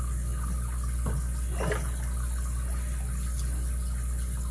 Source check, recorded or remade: recorded